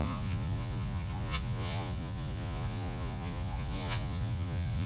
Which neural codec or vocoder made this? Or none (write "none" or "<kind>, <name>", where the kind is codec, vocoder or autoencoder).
vocoder, Vocos